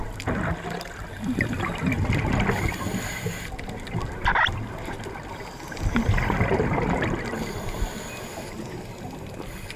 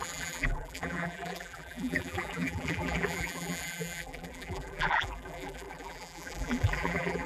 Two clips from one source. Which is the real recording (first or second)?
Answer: first